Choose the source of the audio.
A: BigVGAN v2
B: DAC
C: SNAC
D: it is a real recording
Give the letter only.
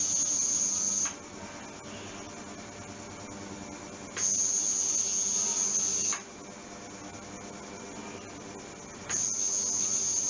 D